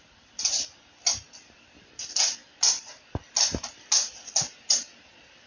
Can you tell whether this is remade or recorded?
recorded